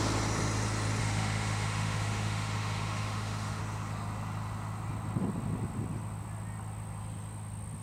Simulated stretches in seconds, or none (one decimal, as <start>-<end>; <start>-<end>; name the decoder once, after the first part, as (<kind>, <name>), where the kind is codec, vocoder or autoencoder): 1.0-3.6 (autoencoder, DAC-VAE)